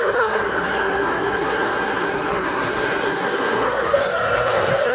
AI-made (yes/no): yes